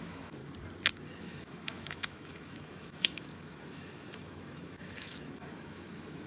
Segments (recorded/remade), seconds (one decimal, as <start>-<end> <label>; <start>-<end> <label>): 0.0-0.4 remade; 0.4-1.2 recorded; 1.2-6.3 remade